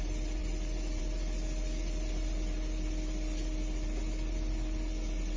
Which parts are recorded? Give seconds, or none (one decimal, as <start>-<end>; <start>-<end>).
0.0-5.4